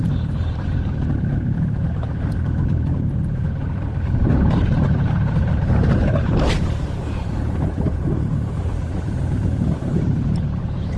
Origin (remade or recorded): remade